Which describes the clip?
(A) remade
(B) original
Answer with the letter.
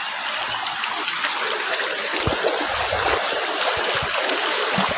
B